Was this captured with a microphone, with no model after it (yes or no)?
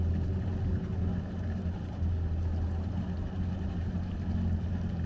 yes